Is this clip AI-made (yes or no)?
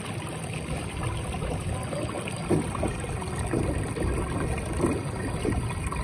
no